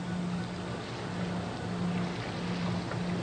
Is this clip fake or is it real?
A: real